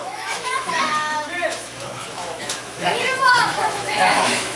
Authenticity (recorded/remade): remade